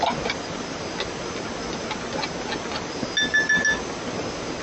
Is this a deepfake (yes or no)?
no